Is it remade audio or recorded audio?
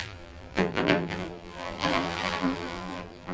remade